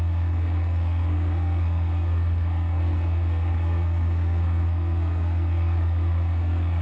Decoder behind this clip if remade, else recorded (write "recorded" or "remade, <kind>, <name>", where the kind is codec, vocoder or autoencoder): remade, codec, SNAC